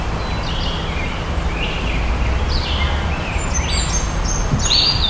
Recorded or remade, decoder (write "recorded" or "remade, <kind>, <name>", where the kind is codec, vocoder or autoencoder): recorded